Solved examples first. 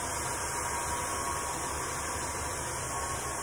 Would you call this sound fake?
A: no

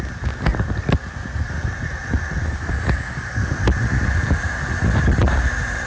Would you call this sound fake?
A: no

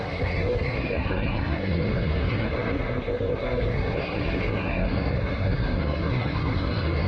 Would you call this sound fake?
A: yes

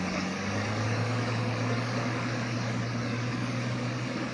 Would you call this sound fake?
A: yes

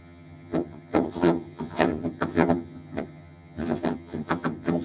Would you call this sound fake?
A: yes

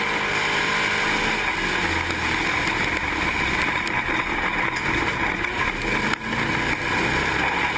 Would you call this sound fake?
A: no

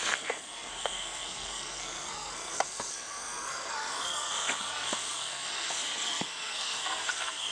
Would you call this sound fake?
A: yes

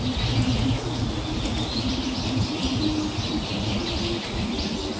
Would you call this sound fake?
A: no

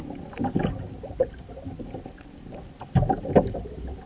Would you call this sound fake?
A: no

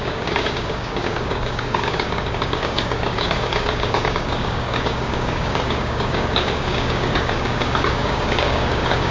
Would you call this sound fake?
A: yes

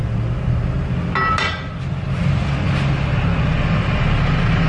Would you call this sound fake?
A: no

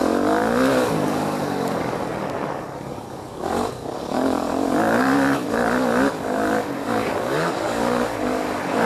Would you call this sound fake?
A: yes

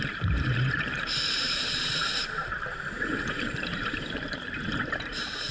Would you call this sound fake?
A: yes